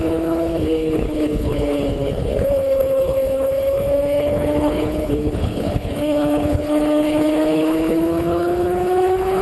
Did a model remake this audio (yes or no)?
yes